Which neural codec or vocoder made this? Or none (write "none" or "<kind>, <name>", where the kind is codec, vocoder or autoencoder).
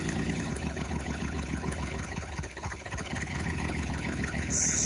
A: codec, HILCodec